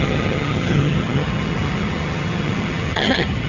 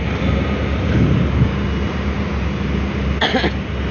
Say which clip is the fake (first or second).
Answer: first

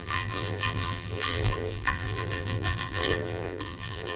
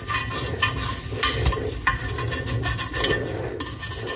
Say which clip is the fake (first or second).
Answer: first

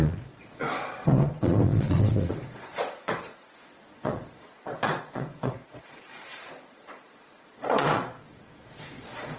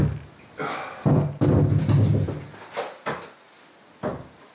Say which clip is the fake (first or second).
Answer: first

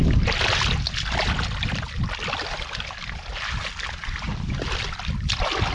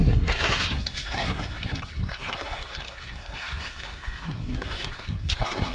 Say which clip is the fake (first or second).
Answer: second